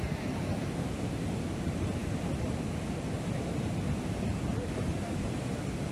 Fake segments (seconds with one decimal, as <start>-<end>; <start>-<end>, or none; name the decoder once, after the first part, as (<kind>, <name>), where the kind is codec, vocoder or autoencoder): none

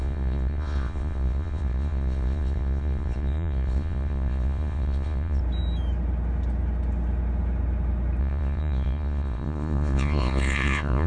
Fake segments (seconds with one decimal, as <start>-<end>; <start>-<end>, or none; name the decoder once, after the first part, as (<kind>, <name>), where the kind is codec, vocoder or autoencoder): 0.0-5.4 (vocoder, Vocos); 8.2-11.1

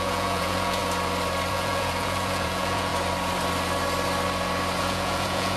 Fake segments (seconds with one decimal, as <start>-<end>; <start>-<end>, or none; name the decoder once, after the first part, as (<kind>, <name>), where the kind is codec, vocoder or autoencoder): 0.0-0.8 (vocoder, Vocos); 1.5-2.9; 4.8-5.6